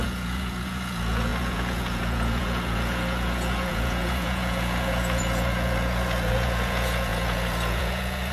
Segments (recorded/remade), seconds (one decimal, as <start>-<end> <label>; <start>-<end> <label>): 0.0-8.3 remade